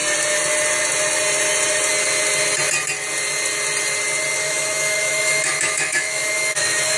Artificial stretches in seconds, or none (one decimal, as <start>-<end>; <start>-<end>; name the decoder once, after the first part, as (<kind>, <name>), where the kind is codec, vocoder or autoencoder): 4.4-7.0 (autoencoder, DAC-VAE)

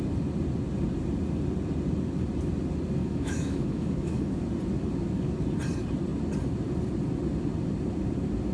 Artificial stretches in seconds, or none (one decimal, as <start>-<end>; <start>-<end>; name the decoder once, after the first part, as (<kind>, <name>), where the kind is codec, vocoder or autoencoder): 3.0-4.4 (autoencoder, DAC-VAE)

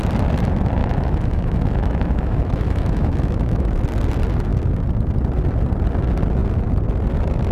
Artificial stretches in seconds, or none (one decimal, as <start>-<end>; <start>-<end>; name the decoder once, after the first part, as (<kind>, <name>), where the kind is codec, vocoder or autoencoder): 0.8-3.8 (autoencoder, DAC-VAE)

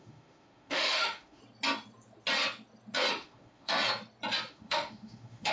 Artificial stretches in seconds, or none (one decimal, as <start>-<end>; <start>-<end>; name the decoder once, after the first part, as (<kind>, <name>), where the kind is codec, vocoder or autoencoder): 0.0-1.4 (autoencoder, DAC-VAE); 3.1-3.7; 4.5-5.5